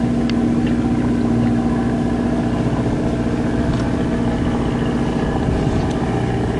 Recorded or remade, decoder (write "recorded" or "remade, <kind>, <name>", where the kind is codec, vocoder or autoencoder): recorded